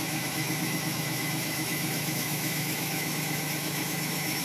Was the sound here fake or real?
fake